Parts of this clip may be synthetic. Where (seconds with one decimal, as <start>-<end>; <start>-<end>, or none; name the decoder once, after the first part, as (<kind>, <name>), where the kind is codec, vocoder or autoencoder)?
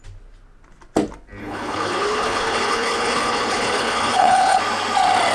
1.4-4.6 (codec, HILCodec)